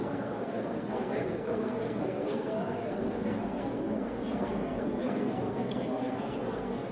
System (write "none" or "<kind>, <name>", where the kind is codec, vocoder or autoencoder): codec, SNAC